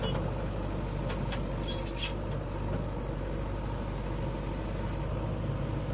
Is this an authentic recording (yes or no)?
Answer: yes